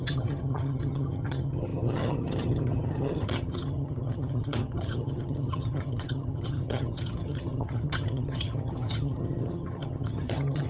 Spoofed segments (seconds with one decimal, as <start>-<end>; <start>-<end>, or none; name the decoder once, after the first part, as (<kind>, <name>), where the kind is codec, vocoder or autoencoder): 0.0-10.7 (vocoder, HiFi-GAN)